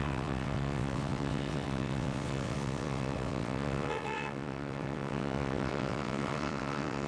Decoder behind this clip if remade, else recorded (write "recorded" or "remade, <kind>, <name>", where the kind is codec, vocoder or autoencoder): remade, vocoder, WaveNeXt